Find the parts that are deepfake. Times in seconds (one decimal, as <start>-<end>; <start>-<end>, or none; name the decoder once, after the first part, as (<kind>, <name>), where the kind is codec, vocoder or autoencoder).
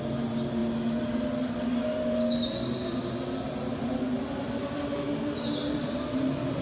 none